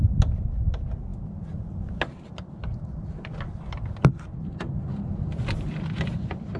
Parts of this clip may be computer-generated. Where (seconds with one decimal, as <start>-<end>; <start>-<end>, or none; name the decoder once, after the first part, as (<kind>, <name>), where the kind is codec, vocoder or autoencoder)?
none

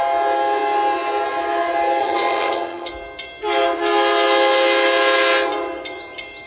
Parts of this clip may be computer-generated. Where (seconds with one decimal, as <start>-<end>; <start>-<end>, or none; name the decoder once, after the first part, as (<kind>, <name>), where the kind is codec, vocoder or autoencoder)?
2.0-2.9 (vocoder, HiFi-GAN)

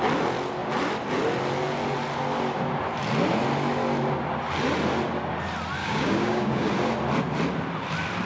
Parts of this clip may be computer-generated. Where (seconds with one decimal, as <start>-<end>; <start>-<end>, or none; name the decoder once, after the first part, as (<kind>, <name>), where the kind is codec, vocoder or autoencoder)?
5.8-6.7 (codec, DAC)

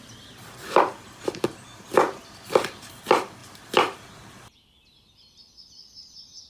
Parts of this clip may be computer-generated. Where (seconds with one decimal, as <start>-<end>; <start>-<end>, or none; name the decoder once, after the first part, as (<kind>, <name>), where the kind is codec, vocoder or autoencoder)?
none

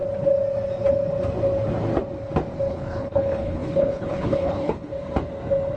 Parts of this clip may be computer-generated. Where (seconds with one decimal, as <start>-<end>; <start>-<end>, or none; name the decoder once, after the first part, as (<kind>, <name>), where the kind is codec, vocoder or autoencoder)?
2.7-4.9 (codec, HILCodec)

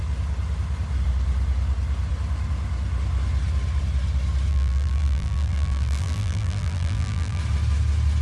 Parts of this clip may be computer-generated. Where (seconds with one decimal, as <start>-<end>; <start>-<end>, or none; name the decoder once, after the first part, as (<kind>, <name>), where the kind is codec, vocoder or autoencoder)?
4.5-7.4 (vocoder, BigVGAN v2)

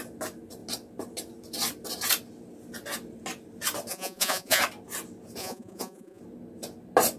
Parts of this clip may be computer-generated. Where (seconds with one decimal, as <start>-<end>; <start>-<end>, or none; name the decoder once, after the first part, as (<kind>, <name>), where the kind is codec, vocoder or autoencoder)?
3.9-4.6 (vocoder, Vocos); 5.4-6.2